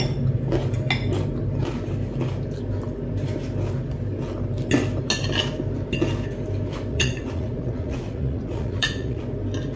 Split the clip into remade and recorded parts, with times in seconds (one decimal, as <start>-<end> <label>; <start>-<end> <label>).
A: 0.0-6.9 recorded; 6.9-9.2 remade; 9.2-9.8 recorded